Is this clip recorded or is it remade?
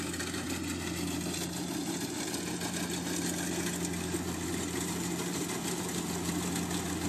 recorded